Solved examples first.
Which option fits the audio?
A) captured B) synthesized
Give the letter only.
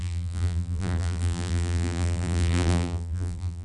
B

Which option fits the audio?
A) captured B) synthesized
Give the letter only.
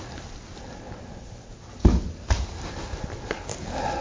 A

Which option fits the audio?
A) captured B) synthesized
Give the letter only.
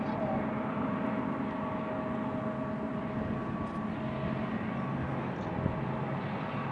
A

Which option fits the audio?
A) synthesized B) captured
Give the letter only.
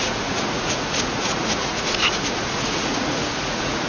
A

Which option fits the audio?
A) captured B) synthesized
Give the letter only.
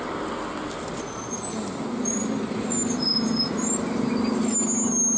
A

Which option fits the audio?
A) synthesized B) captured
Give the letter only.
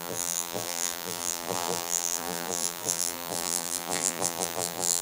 A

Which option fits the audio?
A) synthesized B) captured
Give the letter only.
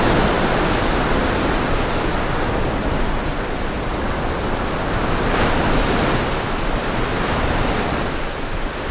B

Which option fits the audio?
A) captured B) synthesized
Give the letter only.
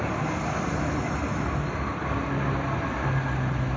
A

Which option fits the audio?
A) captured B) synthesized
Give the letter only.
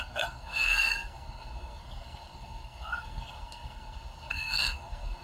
B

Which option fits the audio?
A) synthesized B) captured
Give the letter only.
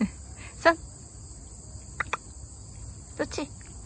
B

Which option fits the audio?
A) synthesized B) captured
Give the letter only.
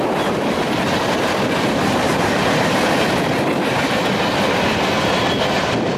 B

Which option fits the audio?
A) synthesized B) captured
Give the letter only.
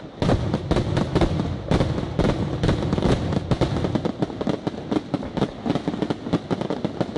B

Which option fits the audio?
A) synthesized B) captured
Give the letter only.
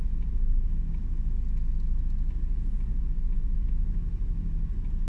B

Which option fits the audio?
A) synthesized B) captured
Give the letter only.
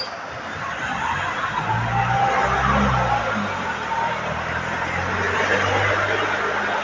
B